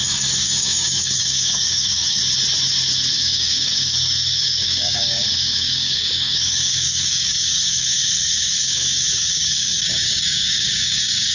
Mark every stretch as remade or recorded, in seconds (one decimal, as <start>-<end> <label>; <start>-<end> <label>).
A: 0.0-2.2 remade; 2.2-3.1 recorded; 3.1-11.3 remade